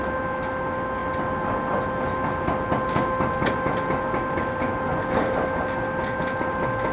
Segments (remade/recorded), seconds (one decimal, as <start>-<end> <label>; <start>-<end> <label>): 0.0-6.9 recorded